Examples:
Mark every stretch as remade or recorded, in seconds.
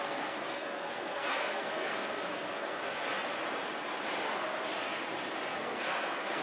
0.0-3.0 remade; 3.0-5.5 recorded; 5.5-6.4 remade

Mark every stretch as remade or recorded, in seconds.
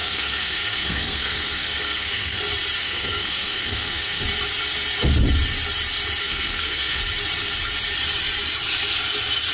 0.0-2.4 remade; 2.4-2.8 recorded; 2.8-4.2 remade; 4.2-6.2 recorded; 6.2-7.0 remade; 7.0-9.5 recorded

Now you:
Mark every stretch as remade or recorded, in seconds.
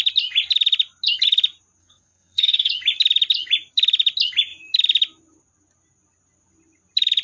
0.0-1.8 recorded; 1.8-2.7 remade; 2.7-7.2 recorded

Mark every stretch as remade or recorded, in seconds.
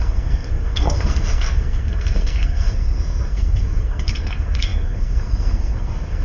0.0-6.2 remade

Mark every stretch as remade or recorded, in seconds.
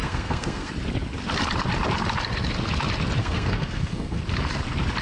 0.0-0.7 remade; 0.7-3.2 recorded; 3.2-4.2 remade; 4.2-5.0 recorded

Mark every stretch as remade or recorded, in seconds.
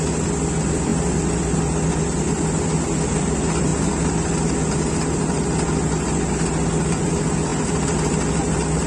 0.0-8.9 recorded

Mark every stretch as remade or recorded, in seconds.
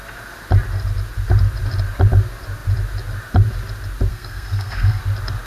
0.0-4.1 recorded; 4.1-5.0 remade; 5.0-5.5 recorded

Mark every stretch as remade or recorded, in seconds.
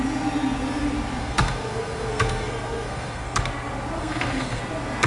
0.0-1.2 recorded; 1.2-3.4 remade; 3.4-4.0 recorded; 4.0-4.6 remade; 4.6-5.1 recorded